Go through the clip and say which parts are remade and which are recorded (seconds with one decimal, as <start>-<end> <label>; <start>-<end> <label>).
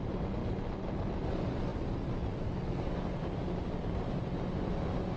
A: 0.0-5.2 recorded